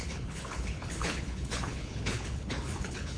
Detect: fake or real fake